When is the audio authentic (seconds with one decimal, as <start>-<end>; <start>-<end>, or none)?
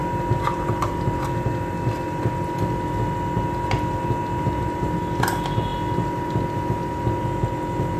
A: 0.0-8.0